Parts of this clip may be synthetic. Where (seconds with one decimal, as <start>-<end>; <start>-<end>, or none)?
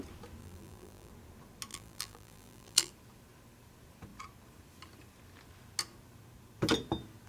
0.4-1.1; 1.7-2.9